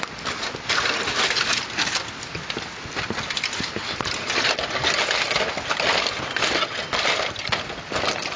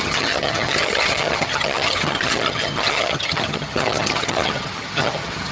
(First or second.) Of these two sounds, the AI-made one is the second